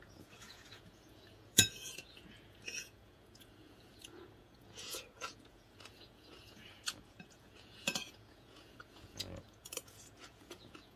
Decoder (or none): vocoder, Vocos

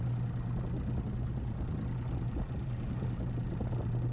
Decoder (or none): none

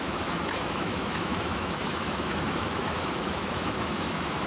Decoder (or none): autoencoder, DAC-VAE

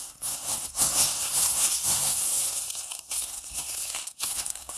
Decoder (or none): codec, SNAC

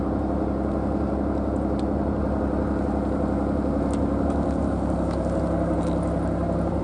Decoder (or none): none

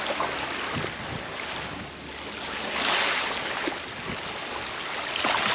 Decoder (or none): none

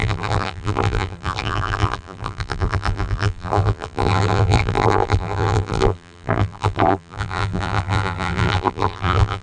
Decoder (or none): vocoder, BigVGAN v2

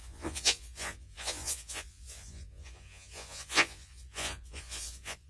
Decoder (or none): vocoder, Vocos